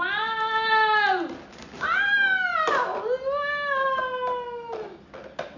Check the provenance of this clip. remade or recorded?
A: recorded